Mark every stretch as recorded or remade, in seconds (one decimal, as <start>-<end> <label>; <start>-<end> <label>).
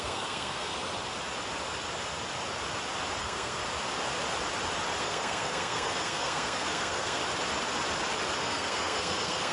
0.0-0.7 remade; 0.7-3.2 recorded; 3.2-3.6 remade; 3.6-5.0 recorded; 5.0-7.2 remade; 7.2-8.4 recorded; 8.4-9.5 remade